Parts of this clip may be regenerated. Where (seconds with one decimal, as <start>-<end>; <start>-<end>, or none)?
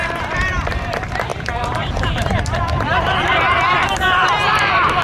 0.0-5.0